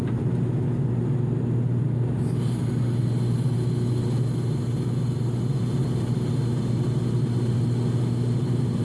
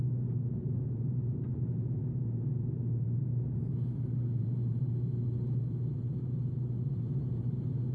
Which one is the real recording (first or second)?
first